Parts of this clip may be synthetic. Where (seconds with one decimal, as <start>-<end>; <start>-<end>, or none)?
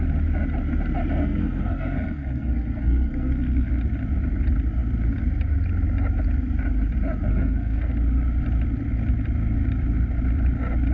1.2-3.7; 7.3-7.9